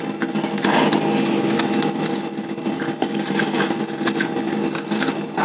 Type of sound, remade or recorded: recorded